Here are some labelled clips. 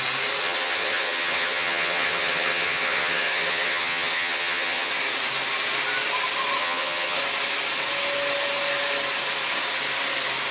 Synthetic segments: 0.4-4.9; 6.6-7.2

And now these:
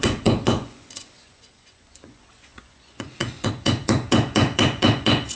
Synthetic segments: 0.0-5.4

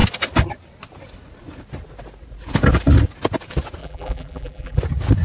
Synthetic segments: 3.8-4.8

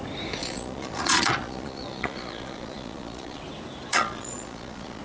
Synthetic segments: 0.4-3.4; 3.9-5.0

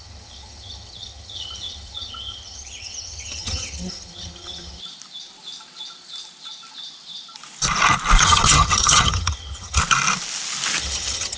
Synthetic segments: 0.0-4.8; 8.2-9.8; 10.8-11.4

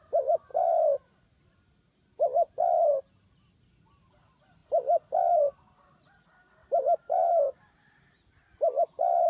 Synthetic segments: 0.5-1.2; 6.6-7.3